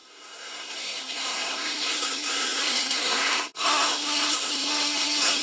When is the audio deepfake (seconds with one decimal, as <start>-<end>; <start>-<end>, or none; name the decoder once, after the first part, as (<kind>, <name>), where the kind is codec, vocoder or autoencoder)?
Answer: 0.0-5.4 (codec, SNAC)